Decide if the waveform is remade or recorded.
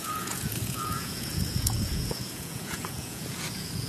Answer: remade